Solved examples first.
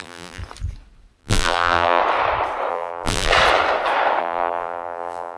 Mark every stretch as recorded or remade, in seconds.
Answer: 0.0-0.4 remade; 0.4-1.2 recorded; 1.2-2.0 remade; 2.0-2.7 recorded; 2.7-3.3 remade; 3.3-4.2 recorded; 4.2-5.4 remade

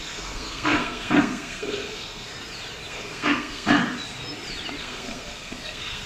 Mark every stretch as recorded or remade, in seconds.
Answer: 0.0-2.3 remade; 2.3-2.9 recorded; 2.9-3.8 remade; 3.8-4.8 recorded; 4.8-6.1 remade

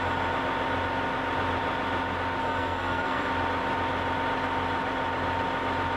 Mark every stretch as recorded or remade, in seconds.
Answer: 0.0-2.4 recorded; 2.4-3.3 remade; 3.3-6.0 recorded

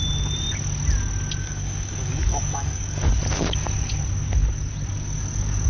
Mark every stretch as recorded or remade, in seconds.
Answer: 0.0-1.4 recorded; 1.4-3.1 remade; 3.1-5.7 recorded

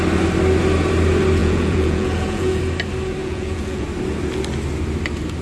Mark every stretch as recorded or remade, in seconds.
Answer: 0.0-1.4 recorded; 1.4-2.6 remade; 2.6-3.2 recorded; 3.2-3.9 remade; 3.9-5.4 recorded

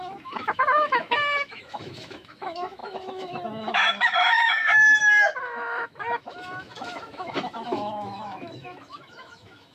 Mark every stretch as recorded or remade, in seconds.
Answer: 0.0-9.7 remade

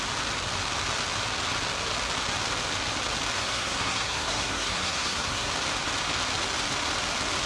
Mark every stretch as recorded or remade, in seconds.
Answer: 0.0-3.4 recorded; 3.4-5.5 remade; 5.5-7.5 recorded

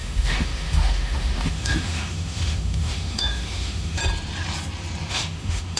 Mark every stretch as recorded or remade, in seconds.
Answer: 0.0-4.0 remade; 4.0-5.1 recorded; 5.1-5.8 remade